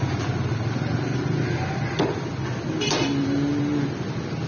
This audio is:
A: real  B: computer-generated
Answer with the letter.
A